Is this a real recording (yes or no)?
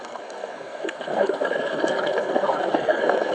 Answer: no